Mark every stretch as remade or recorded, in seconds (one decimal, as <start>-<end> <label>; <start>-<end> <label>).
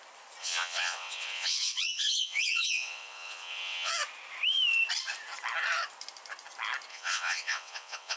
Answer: 0.0-0.4 recorded; 0.4-3.9 remade; 3.9-6.9 recorded; 6.9-8.2 remade